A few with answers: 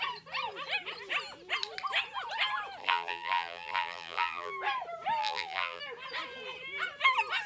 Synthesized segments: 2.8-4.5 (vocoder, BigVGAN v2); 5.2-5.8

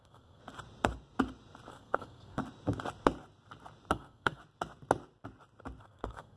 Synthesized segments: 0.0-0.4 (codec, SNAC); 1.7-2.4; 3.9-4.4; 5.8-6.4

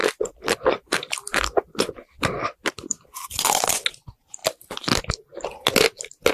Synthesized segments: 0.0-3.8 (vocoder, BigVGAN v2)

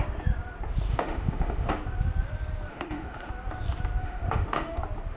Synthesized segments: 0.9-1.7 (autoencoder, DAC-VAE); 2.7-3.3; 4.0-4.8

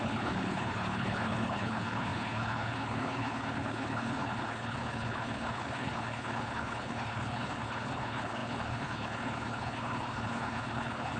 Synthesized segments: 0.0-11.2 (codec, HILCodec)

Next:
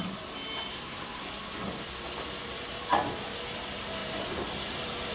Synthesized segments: 0.7-1.2 (codec, SNAC)

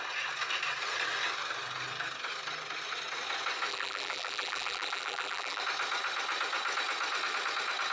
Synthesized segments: 3.7-5.6 (vocoder, BigVGAN v2)